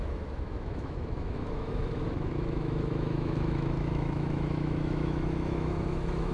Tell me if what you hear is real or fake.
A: fake